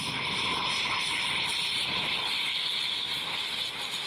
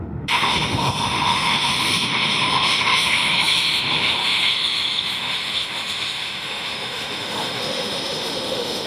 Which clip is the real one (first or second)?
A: first